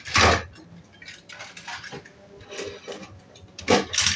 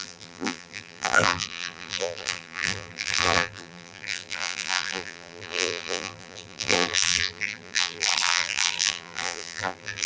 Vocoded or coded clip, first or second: second